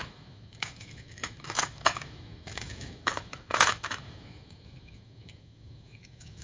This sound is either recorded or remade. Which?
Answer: remade